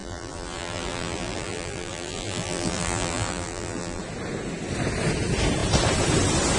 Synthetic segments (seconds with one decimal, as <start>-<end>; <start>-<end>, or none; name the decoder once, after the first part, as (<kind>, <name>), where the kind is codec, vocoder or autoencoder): 0.0-4.0 (vocoder, BigVGAN v2)